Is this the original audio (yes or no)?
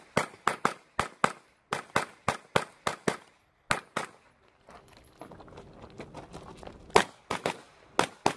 yes